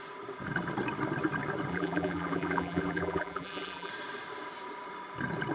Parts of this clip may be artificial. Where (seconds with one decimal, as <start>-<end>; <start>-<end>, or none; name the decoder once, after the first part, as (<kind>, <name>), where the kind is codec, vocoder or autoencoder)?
1.7-3.9 (vocoder, BigVGAN v2)